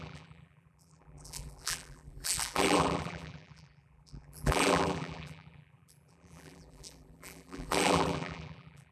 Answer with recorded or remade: remade